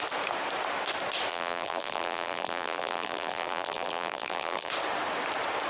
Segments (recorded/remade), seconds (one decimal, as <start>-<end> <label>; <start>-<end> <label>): 0.0-1.3 recorded; 1.3-4.7 remade; 4.7-5.7 recorded